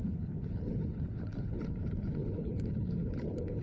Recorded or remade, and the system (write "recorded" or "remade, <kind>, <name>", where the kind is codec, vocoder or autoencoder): remade, codec, HILCodec